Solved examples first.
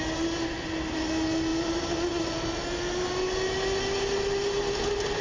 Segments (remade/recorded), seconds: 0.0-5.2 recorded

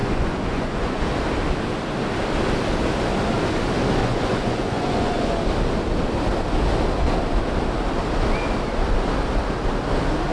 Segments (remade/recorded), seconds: 0.0-1.0 remade; 1.0-4.0 recorded; 4.0-5.3 remade; 5.3-10.3 recorded

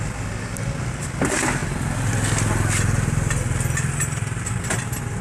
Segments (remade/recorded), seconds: 0.0-5.2 recorded